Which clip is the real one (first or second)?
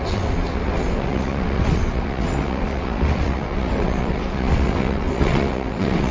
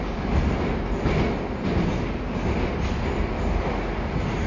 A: second